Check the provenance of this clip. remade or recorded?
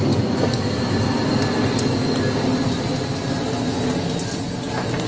recorded